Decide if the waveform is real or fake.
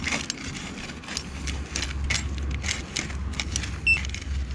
real